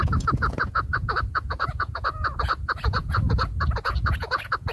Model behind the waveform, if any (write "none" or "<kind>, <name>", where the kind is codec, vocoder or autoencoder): vocoder, Vocos